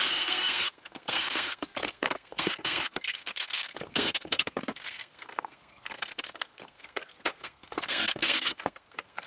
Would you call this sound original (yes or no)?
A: no